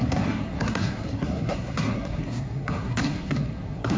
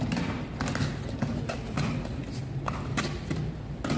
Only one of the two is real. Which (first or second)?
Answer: second